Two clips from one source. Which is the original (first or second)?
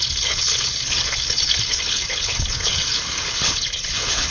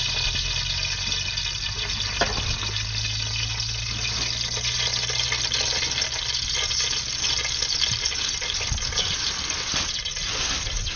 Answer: second